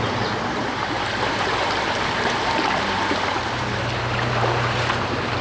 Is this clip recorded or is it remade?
remade